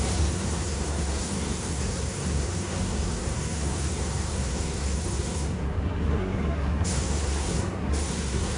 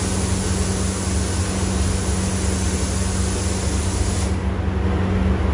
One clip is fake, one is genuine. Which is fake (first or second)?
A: first